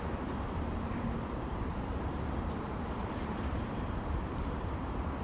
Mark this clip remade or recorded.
remade